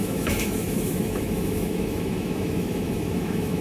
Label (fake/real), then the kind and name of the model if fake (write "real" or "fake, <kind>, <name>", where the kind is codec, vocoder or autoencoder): fake, autoencoder, DAC-VAE